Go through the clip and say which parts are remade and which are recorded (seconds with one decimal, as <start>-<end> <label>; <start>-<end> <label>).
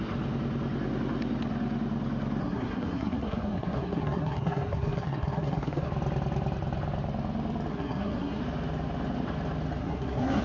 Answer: 0.0-2.4 recorded; 2.4-5.9 remade; 5.9-7.7 recorded; 7.7-8.4 remade; 8.4-9.8 recorded; 9.8-10.4 remade